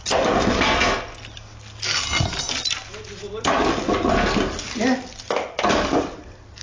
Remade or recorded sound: recorded